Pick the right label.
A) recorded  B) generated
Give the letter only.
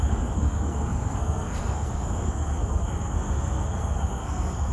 B